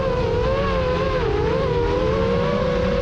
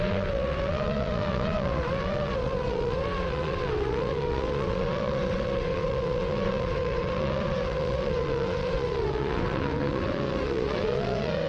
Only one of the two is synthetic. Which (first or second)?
second